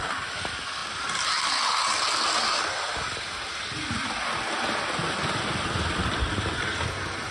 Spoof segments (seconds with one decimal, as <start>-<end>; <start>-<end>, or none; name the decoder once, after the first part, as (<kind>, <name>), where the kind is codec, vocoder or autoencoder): none